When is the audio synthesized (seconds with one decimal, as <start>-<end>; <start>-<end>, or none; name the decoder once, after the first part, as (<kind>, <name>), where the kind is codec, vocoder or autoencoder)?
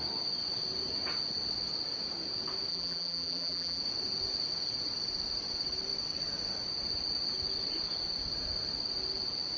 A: 2.7-3.8 (vocoder, BigVGAN v2)